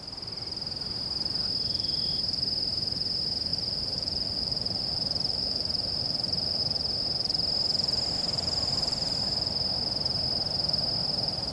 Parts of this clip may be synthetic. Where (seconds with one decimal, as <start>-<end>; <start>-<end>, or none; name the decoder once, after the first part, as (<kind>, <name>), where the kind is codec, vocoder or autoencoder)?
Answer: 3.5-6.6 (vocoder, BigVGAN v2)